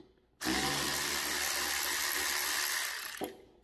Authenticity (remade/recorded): recorded